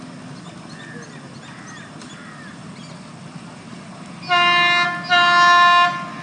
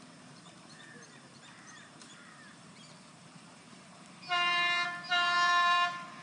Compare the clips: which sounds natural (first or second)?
first